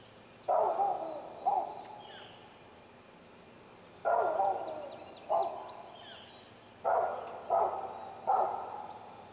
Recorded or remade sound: recorded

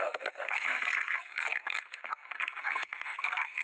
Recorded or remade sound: remade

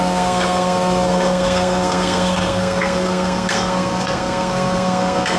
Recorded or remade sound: remade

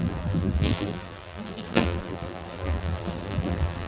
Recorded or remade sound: remade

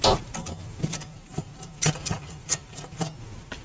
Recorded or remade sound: recorded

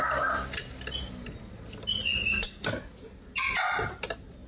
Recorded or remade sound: recorded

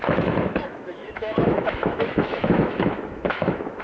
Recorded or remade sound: remade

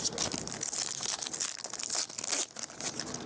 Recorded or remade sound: recorded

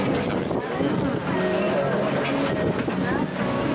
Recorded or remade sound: recorded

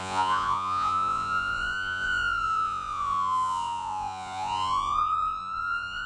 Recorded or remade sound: remade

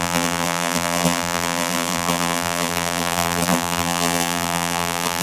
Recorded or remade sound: remade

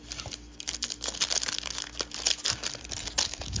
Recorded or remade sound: recorded